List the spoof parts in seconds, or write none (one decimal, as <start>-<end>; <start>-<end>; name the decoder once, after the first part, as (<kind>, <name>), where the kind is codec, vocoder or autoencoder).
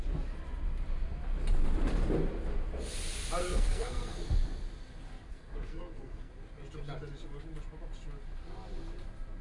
3.4-4.2 (codec, SNAC); 5.3-6.3